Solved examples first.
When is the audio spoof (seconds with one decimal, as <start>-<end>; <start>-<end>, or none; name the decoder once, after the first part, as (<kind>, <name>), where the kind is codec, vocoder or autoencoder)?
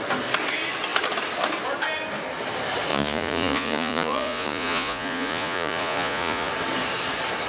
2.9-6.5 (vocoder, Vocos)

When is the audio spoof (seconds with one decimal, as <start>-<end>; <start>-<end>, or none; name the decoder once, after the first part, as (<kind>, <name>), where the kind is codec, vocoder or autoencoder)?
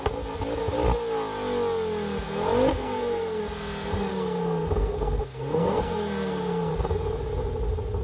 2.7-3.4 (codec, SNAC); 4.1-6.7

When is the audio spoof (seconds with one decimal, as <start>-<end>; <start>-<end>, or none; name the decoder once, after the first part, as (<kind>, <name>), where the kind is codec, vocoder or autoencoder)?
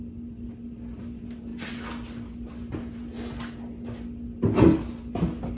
none